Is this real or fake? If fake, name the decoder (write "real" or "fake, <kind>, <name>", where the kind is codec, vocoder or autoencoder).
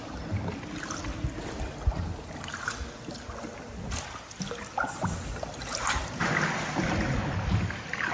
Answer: real